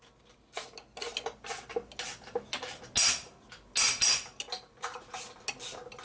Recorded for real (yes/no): yes